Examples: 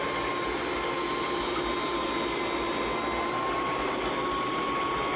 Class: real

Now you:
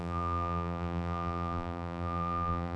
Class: fake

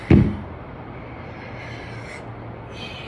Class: real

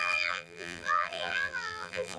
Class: fake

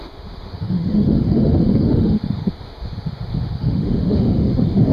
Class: fake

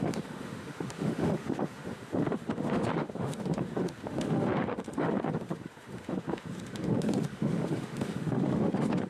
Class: fake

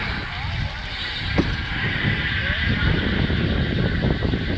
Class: real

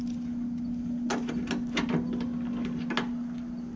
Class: real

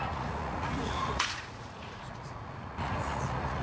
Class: fake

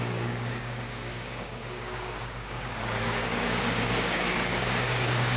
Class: fake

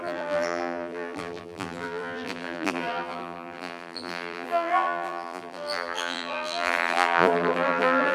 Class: fake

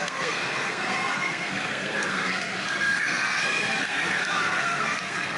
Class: fake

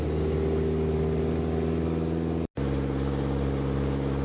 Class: real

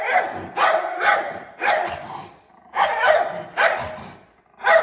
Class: real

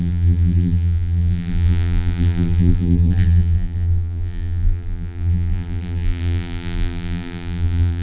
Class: fake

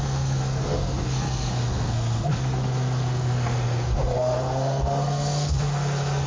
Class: fake